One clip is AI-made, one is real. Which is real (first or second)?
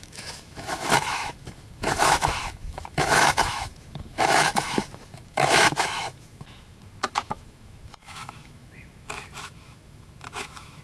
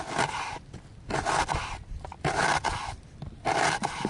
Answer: second